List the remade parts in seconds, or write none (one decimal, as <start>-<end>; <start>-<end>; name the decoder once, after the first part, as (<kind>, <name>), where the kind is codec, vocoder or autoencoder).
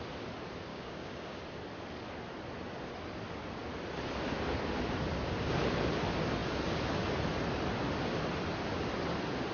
0.7-1.4 (codec, DAC)